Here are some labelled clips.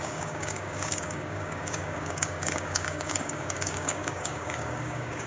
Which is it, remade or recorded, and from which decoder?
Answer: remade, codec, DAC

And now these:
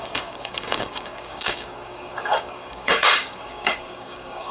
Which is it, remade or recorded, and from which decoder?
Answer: remade, codec, DAC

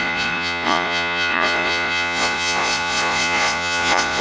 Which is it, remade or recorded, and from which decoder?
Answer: remade, vocoder, Vocos